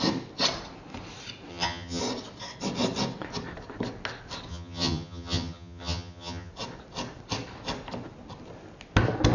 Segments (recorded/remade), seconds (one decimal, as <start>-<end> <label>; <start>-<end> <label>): 0.0-1.5 recorded; 1.5-2.0 remade; 2.0-4.5 recorded; 4.5-6.5 remade; 6.5-9.3 recorded